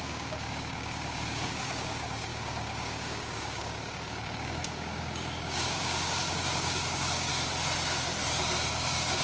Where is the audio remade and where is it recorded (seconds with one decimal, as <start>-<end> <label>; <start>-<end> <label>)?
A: 0.0-7.3 remade; 7.3-8.7 recorded; 8.7-9.2 remade